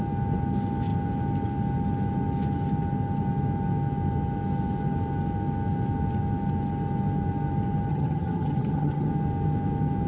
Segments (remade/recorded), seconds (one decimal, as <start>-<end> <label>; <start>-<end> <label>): 0.0-7.9 recorded; 7.9-9.1 remade; 9.1-10.1 recorded